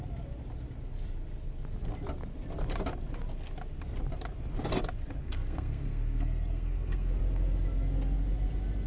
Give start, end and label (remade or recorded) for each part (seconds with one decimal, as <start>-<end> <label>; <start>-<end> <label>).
0.0-5.2 recorded; 5.2-7.2 remade; 7.2-8.9 recorded